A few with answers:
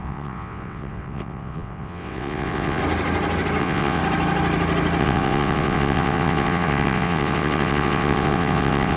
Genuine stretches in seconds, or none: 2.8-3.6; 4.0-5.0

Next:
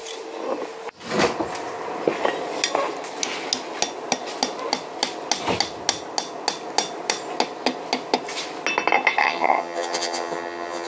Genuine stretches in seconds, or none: 0.0-9.2

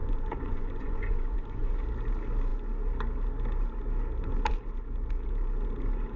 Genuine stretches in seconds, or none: 1.7-6.2

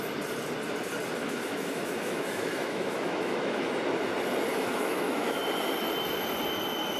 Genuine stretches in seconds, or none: 0.0-1.2; 3.7-4.5; 5.4-7.0

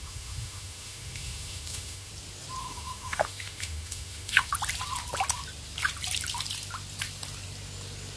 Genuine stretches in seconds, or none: 2.1-2.6; 4.5-8.2

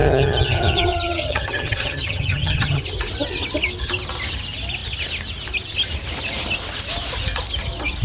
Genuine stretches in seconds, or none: 2.8-8.0

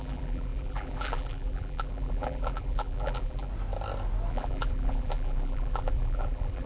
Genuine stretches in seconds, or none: 3.5-4.3